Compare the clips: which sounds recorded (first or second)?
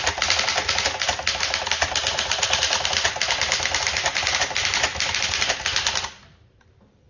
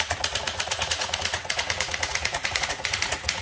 first